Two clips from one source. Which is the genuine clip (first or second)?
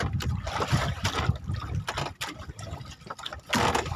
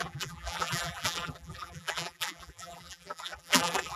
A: first